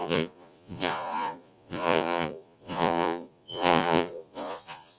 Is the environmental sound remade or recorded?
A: remade